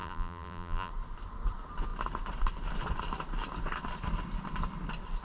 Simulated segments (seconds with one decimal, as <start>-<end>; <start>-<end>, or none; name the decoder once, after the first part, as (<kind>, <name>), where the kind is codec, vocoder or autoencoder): 0.0-0.9 (vocoder, BigVGAN v2)